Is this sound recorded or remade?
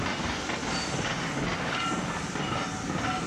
recorded